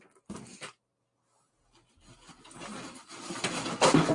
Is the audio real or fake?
real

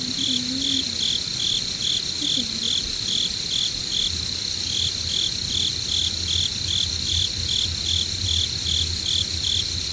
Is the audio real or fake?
real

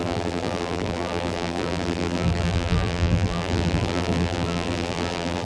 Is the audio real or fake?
fake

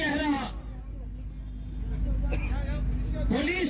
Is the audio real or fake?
real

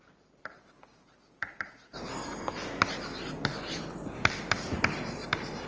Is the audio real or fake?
real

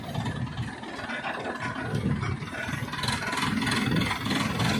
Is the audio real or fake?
real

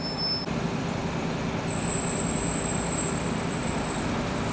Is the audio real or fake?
real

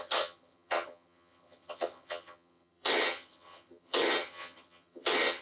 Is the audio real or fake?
fake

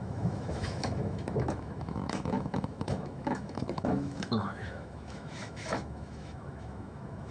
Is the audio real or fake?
fake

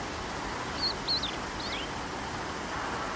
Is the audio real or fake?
real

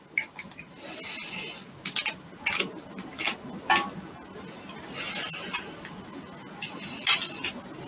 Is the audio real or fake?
real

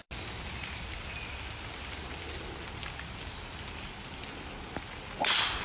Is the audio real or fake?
real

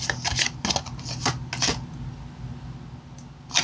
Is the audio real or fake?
real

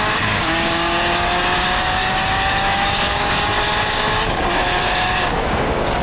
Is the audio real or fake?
fake